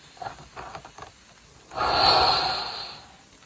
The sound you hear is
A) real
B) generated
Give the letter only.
A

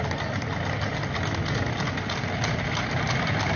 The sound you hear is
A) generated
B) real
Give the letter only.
B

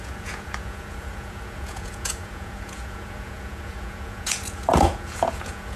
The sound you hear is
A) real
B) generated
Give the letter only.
B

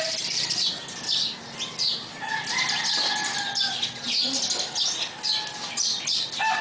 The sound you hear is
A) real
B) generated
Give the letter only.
A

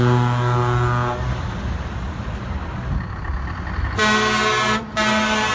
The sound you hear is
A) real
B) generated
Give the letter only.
A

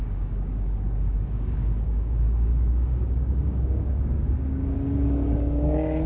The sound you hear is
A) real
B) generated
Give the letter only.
B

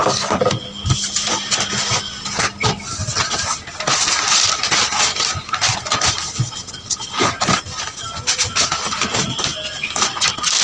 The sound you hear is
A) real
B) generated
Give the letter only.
A